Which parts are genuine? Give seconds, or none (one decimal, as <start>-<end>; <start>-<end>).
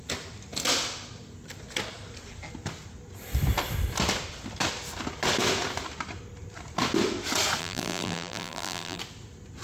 0.0-7.6; 9.0-9.6